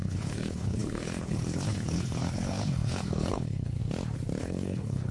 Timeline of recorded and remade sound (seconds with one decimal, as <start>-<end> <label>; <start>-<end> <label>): 0.0-3.8 remade; 3.8-4.4 recorded; 4.4-5.1 remade